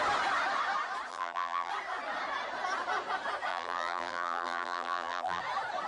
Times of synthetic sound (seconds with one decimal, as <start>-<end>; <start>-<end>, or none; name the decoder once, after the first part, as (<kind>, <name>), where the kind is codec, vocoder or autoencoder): 1.1-1.7 (vocoder, BigVGAN v2); 3.5-5.4